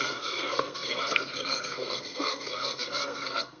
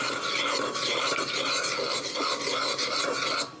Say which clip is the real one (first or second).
second